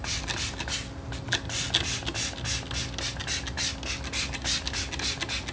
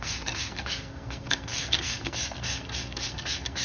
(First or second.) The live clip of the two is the first